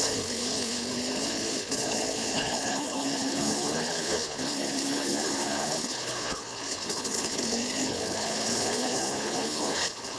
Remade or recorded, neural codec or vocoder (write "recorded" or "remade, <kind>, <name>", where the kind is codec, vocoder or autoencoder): remade, codec, HILCodec